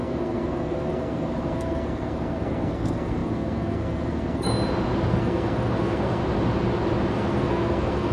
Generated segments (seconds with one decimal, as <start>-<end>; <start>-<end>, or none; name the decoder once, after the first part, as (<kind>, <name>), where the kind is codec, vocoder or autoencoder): 0.0-4.5 (codec, SNAC); 5.1-6.2; 7.1-8.1